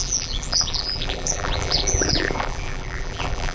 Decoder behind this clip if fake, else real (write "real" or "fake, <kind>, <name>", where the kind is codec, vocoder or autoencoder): fake, vocoder, BigVGAN v2